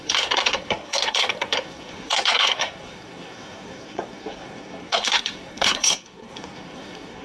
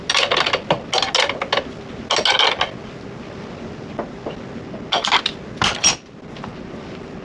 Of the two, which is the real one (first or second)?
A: second